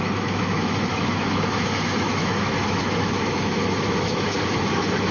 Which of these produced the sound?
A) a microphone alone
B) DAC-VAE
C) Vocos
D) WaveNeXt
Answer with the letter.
B